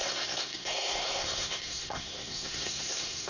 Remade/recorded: remade